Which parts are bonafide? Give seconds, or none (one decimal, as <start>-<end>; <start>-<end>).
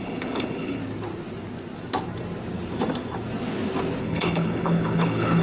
0.8-4.0